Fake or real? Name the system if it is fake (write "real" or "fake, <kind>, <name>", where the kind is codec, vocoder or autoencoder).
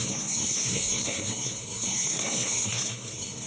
fake, codec, SNAC